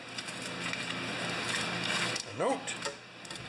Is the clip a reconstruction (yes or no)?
no